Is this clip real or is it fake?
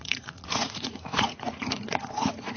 fake